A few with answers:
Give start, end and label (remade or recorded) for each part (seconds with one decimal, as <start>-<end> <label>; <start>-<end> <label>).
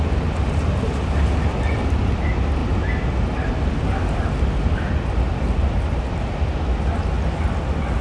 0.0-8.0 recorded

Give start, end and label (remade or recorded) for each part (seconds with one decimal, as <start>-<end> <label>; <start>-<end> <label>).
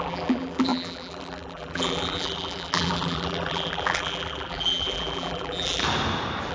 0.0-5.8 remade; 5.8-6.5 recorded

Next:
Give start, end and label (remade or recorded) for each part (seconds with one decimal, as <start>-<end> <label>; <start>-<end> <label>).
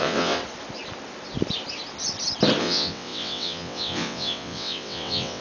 0.0-0.4 remade; 0.4-2.6 recorded; 2.6-5.4 remade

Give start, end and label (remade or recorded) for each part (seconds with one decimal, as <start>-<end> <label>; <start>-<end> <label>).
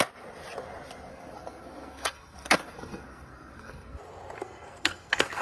0.0-1.1 recorded; 1.1-4.0 remade; 4.0-4.4 recorded; 4.4-5.4 remade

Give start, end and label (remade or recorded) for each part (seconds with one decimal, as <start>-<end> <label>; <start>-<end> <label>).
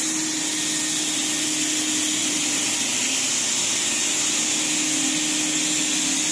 0.0-2.2 recorded; 2.2-3.0 remade; 3.0-6.3 recorded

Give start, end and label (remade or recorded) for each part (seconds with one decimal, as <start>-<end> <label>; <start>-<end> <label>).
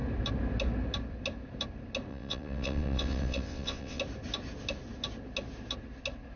0.0-2.1 recorded; 2.1-4.0 remade; 4.0-6.4 recorded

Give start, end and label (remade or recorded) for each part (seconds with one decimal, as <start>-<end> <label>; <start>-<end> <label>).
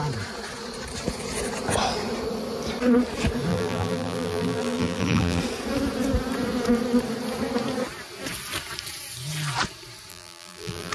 0.0-3.5 recorded; 3.5-5.4 remade; 5.4-10.1 recorded; 10.1-10.9 remade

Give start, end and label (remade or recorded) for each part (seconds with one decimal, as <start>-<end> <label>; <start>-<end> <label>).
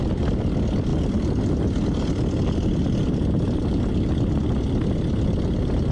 0.0-5.9 recorded